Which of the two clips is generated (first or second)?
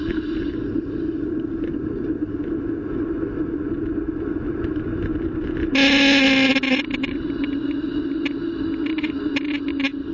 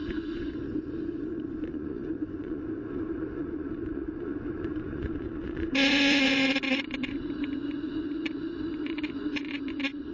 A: second